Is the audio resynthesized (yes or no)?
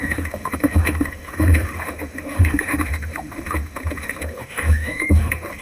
yes